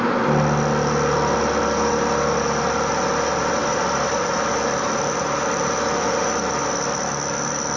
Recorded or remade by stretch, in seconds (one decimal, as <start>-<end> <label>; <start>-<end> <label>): 0.0-7.8 recorded